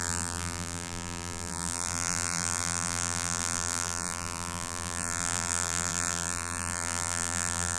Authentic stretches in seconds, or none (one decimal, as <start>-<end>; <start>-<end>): none